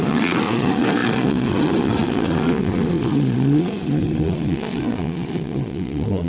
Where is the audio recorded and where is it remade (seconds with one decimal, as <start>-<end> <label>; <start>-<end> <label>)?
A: 0.0-6.3 remade